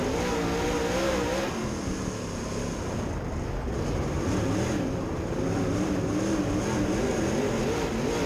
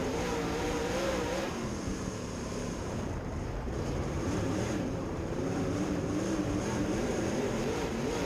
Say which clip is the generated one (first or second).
second